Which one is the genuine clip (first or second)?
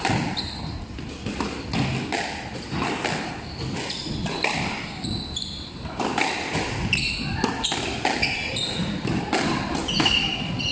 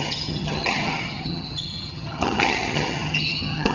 first